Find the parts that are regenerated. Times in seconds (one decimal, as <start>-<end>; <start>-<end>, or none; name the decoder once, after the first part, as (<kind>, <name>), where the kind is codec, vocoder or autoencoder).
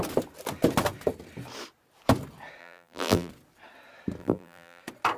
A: 2.6-3.3 (vocoder, BigVGAN v2); 4.2-4.8